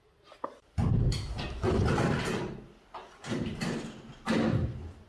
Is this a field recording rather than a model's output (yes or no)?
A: yes